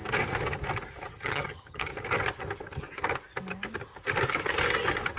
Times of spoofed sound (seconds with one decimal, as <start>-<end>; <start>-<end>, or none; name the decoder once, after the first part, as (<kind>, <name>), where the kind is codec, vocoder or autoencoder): 1.1-1.9 (vocoder, HiFi-GAN)